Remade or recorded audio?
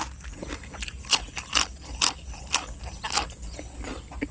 recorded